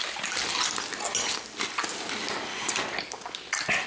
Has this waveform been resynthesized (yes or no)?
no